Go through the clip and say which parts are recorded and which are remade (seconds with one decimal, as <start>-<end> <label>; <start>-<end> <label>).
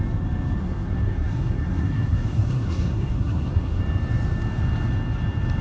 0.0-0.6 recorded; 0.6-3.8 remade; 3.8-5.6 recorded